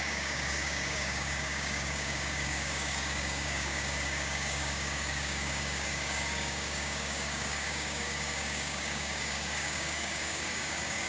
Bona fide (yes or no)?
no